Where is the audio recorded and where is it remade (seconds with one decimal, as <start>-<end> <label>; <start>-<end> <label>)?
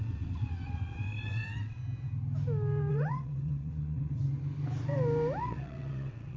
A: 0.0-1.8 remade; 1.8-2.9 recorded; 2.9-4.2 remade; 4.2-5.4 recorded; 5.4-6.4 remade